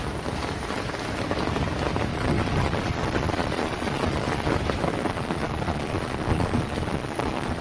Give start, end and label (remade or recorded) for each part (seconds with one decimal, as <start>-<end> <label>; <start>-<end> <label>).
0.0-2.1 recorded; 2.1-4.5 remade; 4.5-5.0 recorded; 5.0-7.6 remade